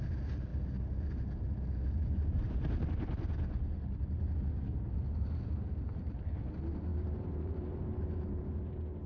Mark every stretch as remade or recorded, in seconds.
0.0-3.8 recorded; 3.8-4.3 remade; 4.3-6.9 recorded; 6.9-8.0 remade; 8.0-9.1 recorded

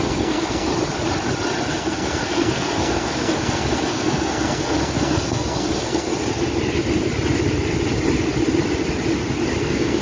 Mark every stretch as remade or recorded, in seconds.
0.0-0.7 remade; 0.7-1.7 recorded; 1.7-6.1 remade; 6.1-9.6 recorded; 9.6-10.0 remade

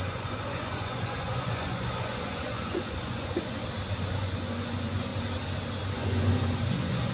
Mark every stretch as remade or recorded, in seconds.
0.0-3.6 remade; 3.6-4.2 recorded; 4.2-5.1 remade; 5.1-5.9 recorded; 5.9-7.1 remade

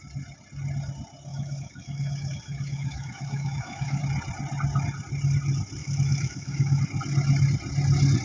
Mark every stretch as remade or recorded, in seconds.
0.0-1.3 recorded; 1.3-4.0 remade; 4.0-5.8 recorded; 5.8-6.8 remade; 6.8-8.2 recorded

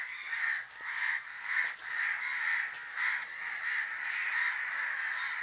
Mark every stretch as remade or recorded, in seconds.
0.0-0.9 recorded; 0.9-1.6 remade; 1.6-5.4 recorded

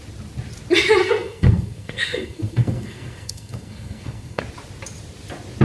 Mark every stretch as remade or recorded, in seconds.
0.0-1.0 recorded; 1.0-4.4 remade; 4.4-5.6 recorded